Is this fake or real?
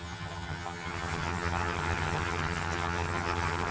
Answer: fake